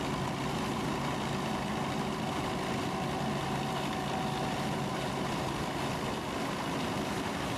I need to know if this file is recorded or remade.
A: recorded